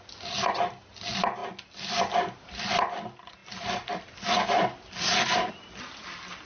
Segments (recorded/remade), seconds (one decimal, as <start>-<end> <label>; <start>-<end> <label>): 0.0-6.5 recorded